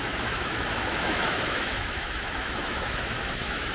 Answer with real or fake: fake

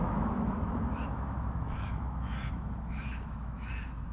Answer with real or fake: fake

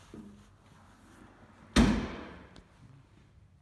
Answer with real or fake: real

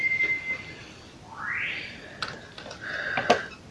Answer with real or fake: real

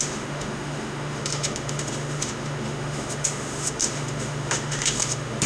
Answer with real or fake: fake